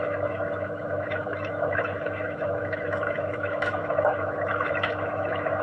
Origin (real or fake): fake